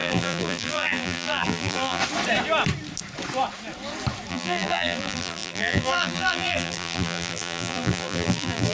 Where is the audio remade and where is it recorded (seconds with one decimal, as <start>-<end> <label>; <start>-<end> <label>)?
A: 0.0-2.0 remade; 2.0-4.3 recorded; 4.3-8.7 remade